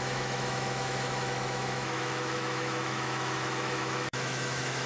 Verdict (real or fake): fake